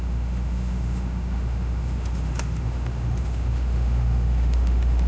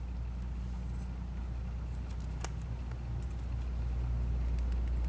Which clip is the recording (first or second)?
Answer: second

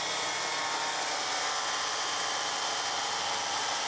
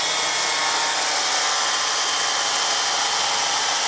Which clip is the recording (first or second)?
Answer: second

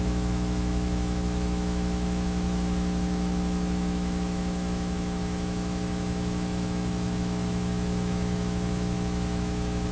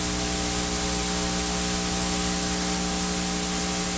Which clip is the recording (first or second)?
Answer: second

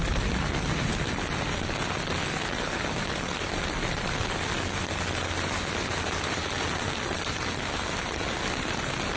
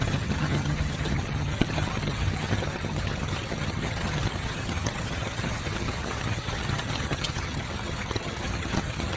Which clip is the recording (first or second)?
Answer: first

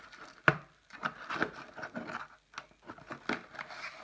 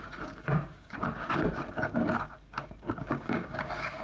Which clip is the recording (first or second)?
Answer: first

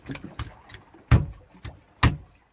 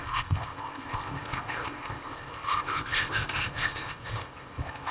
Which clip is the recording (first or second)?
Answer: first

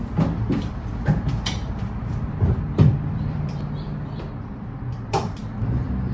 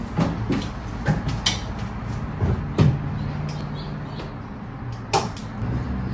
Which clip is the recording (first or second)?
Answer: second